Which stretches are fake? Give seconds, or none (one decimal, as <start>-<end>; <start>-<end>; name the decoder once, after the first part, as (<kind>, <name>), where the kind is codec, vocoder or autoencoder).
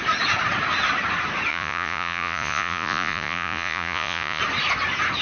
1.5-4.4 (vocoder, Vocos)